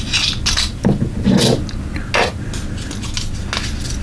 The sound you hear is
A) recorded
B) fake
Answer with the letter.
A